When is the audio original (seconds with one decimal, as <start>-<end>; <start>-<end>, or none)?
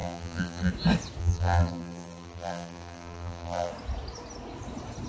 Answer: 0.7-1.2; 3.7-5.1